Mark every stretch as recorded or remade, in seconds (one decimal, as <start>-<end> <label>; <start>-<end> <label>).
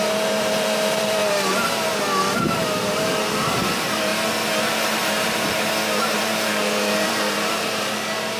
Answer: 0.0-1.2 remade; 1.2-2.6 recorded; 2.6-4.1 remade; 4.1-4.8 recorded; 4.8-8.4 remade